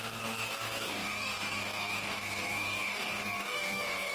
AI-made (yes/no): yes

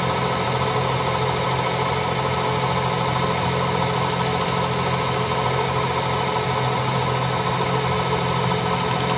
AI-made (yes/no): no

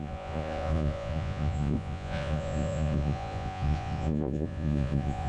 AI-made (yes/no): yes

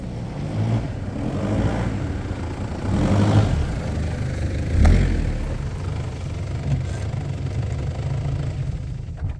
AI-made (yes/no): no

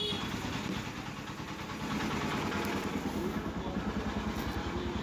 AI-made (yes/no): no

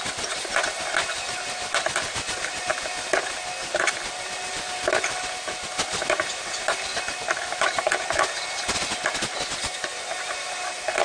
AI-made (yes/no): no